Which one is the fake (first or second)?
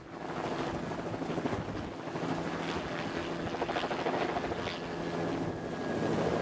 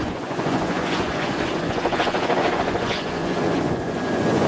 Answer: second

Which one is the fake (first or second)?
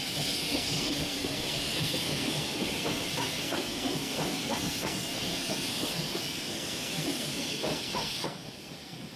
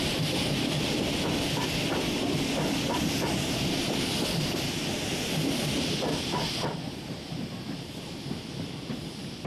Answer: first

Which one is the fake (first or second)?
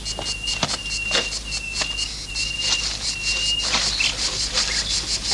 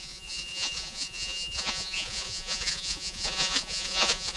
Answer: second